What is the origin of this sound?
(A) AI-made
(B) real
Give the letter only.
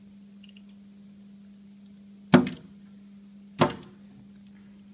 B